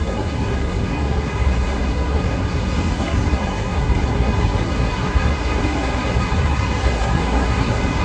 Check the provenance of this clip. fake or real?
fake